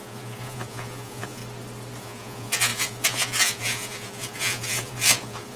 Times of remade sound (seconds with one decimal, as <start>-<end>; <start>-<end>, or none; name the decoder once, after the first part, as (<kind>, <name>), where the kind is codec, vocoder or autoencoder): 0.0-1.4 (vocoder, Vocos); 2.0-5.6